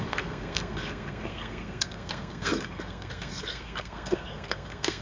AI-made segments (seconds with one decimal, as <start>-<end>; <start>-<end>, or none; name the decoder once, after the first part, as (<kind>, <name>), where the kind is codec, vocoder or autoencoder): 0.0-5.0 (codec, SNAC)